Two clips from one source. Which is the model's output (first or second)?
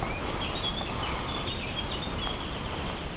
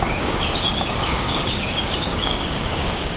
second